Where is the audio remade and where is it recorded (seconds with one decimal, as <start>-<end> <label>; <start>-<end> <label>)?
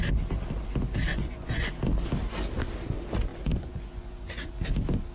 0.0-1.1 recorded; 1.1-1.7 remade; 1.7-3.3 recorded; 3.3-4.4 remade; 4.4-5.1 recorded